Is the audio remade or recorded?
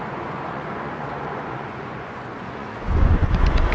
remade